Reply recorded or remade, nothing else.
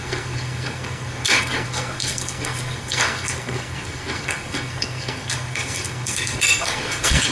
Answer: remade